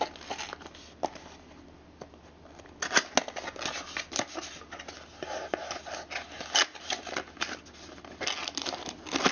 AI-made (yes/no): no